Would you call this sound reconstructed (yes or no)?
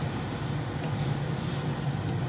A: no